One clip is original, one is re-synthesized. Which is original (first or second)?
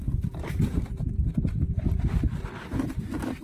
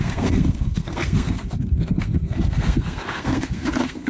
first